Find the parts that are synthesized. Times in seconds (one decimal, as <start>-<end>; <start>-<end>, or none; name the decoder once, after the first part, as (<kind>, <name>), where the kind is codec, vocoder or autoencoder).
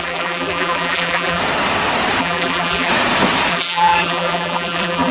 0.0-1.4 (vocoder, BigVGAN v2); 2.2-2.9; 3.5-5.1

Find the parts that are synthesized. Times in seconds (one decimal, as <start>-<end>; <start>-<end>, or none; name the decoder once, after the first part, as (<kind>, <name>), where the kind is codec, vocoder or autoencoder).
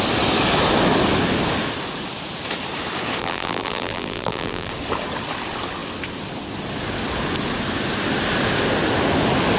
3.2-4.7 (vocoder, BigVGAN v2)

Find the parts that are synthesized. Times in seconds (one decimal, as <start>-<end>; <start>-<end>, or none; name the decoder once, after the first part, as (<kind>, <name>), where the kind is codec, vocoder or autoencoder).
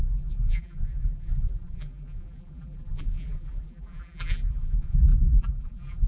0.0-6.1 (vocoder, BigVGAN v2)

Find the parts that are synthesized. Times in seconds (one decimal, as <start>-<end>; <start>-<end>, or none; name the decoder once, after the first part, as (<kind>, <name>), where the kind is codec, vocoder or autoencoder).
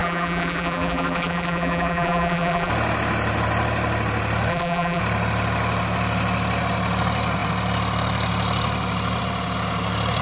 0.0-2.7 (vocoder, BigVGAN v2); 4.5-5.0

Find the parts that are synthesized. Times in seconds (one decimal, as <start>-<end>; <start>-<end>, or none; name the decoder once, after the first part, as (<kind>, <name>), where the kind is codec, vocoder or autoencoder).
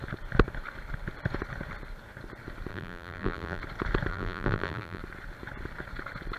2.7-3.6 (vocoder, BigVGAN v2); 4.1-5.0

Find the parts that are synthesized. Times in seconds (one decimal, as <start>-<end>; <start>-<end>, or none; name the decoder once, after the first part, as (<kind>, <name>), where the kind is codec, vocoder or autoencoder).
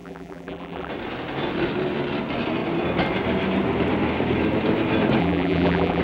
0.0-0.9 (vocoder, BigVGAN v2); 5.2-6.0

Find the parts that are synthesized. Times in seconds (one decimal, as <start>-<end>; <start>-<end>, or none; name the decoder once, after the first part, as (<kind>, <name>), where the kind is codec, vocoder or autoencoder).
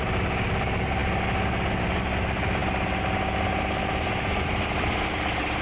none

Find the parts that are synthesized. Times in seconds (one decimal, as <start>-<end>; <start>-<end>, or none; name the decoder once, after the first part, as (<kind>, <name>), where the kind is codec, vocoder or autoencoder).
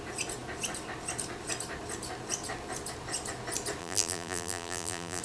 3.8-5.2 (vocoder, BigVGAN v2)